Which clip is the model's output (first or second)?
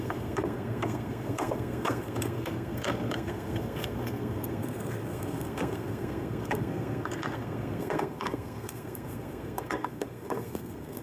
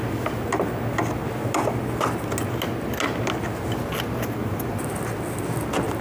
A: first